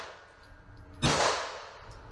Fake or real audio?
real